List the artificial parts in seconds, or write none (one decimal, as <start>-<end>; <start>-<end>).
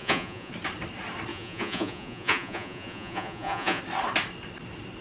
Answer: 0.0-0.5; 1.3-3.8